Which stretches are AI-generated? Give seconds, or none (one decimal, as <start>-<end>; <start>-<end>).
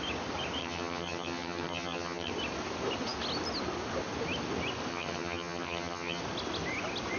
0.6-2.3; 4.9-6.2